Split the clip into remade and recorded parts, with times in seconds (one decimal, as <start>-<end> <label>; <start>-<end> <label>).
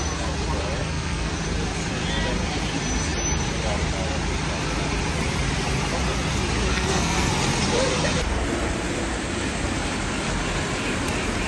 0.0-0.8 recorded; 0.8-1.3 remade; 1.3-6.7 recorded; 6.7-7.3 remade; 7.3-11.5 recorded